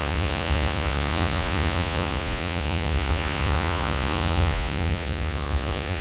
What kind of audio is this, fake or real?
fake